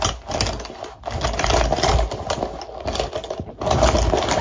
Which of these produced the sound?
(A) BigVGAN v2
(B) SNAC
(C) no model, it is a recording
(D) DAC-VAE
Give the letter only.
C